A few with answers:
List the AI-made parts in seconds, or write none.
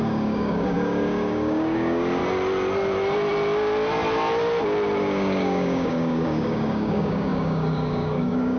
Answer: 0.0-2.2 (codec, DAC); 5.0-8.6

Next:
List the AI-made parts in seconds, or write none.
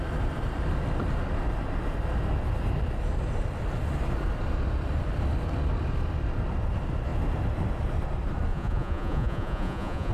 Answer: 8.5-10.1 (vocoder, Vocos)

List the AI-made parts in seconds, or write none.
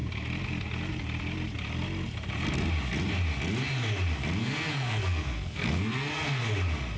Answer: 4.4-6.4 (codec, SNAC)